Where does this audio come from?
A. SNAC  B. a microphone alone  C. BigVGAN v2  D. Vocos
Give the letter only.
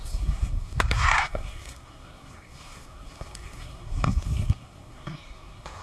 A